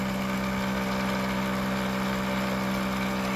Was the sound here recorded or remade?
recorded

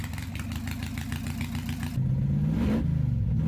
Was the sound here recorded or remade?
recorded